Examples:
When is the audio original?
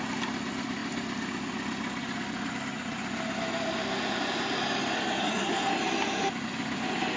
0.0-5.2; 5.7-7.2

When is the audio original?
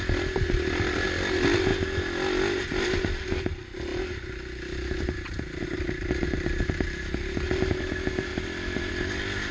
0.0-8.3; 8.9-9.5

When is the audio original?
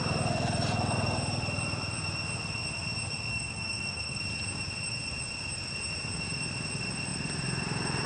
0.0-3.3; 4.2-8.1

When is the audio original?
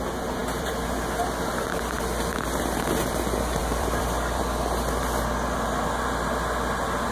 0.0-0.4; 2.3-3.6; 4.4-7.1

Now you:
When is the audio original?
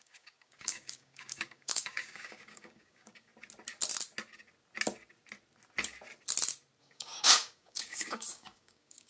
3.3-6.8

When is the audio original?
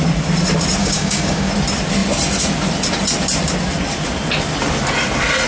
0.0-0.8; 1.5-5.5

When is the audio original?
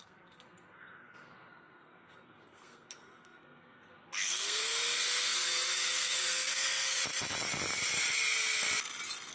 7.0-9.3